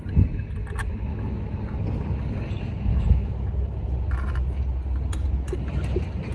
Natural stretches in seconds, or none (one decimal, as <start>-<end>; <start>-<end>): 0.0-0.8; 1.5-2.9; 3.8-6.3